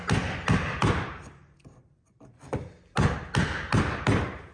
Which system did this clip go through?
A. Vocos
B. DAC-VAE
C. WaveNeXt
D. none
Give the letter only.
D